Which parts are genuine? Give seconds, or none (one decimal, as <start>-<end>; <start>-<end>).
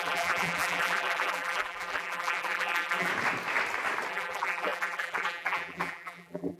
3.1-4.1